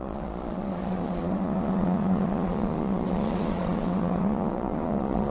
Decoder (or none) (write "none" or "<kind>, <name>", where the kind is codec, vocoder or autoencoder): vocoder, Vocos